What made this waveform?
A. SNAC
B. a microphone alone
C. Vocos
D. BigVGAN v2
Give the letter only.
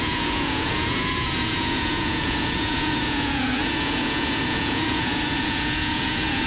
C